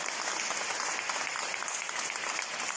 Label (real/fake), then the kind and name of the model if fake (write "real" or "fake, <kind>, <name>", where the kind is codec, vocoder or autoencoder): real